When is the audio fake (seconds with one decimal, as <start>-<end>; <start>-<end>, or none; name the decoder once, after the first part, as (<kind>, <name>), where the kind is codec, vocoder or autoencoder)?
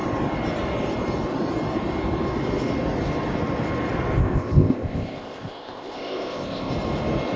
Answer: 4.2-6.7 (codec, ZipCodec)